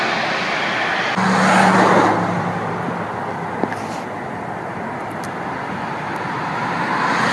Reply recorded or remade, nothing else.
recorded